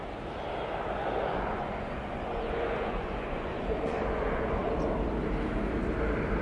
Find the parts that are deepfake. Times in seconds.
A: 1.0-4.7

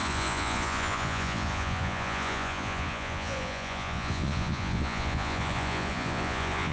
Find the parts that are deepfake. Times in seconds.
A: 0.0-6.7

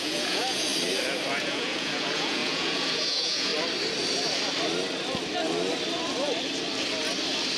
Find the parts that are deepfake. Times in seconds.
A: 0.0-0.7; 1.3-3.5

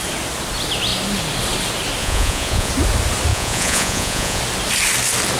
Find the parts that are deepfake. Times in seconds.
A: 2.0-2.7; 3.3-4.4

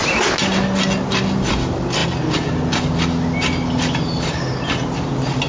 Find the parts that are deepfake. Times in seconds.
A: none

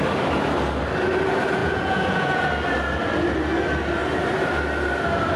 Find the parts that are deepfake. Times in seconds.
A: 1.6-2.5